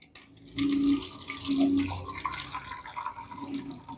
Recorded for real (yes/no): yes